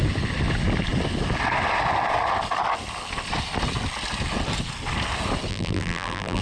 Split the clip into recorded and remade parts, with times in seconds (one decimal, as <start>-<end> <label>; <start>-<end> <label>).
0.0-5.5 recorded; 5.5-6.4 remade